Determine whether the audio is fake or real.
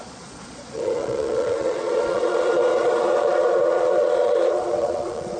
fake